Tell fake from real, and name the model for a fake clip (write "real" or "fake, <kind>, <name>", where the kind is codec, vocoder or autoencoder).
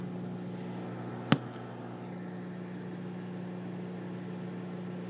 real